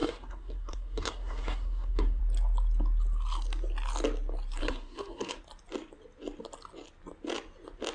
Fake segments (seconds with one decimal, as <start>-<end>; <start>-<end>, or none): 0.0-2.2; 4.6-5.4